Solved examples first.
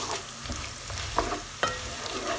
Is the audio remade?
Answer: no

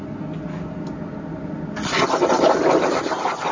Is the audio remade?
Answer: no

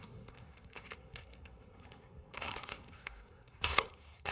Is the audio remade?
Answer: yes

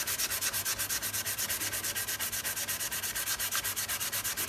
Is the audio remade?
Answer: no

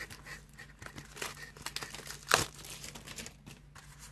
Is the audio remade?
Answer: no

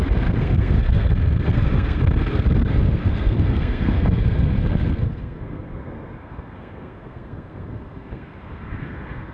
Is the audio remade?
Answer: yes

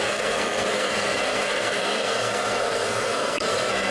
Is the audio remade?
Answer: yes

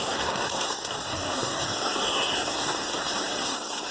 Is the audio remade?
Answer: yes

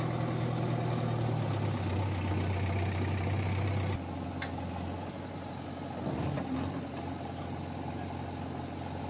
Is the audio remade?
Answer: no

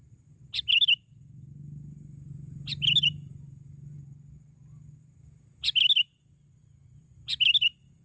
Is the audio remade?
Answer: no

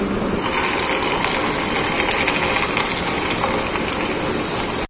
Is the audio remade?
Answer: no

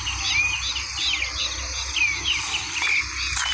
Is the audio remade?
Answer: no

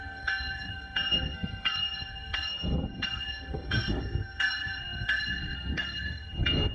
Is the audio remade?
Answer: yes